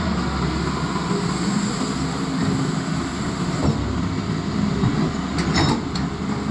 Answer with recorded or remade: recorded